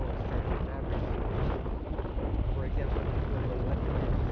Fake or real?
real